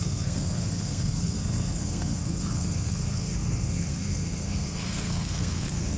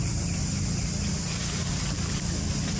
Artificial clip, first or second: first